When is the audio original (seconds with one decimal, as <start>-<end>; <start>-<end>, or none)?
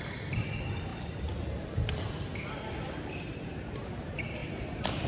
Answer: 2.3-3.3; 4.4-5.1